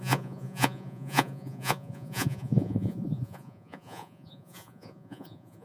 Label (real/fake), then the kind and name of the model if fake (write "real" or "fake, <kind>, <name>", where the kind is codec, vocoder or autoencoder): fake, vocoder, Vocos